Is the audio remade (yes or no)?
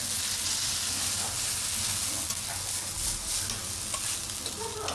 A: no